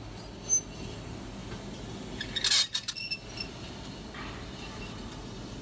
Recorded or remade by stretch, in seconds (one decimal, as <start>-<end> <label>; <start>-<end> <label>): 0.0-5.6 recorded